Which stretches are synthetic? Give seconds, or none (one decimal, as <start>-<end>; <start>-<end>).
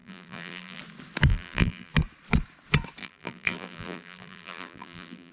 0.0-0.8; 1.3-1.9; 3.0-5.3